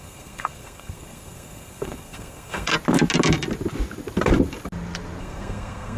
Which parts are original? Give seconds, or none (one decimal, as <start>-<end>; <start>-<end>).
2.7-5.2